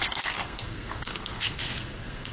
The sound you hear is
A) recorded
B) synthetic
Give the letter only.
B